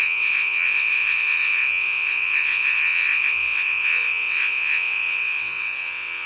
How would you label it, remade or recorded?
remade